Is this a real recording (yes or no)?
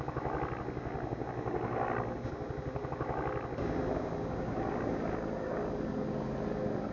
yes